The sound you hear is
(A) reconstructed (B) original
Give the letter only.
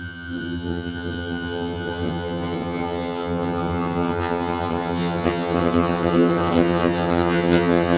A